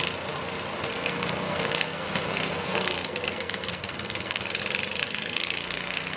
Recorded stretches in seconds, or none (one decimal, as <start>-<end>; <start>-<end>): 0.0-0.9; 4.6-5.0